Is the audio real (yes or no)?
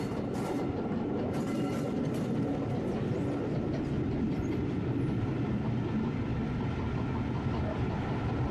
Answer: yes